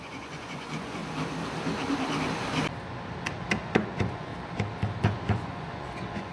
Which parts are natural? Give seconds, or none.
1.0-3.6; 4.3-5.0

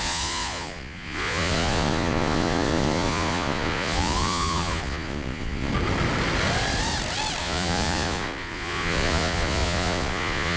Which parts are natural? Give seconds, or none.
5.7-7.4

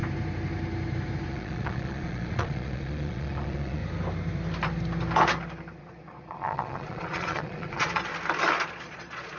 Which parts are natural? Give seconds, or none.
0.0-1.3; 3.8-5.8; 8.1-8.7

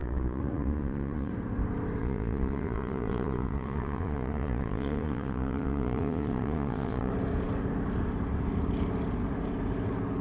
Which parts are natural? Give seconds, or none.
1.3-2.0; 7.1-10.2